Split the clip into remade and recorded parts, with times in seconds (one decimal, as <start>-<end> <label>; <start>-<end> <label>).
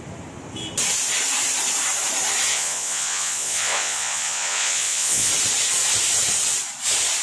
0.0-2.5 recorded; 2.5-5.3 remade; 5.3-7.2 recorded